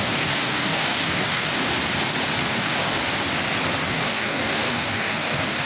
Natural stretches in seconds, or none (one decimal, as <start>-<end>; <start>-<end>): 1.7-2.5; 3.0-3.9